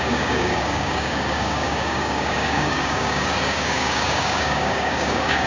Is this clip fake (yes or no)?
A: yes